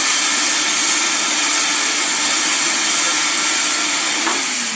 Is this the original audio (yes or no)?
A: yes